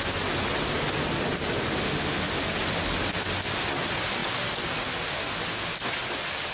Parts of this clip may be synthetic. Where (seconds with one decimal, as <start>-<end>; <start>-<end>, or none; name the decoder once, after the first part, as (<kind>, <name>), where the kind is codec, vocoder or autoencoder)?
1.8-2.3 (autoencoder, DAC-VAE)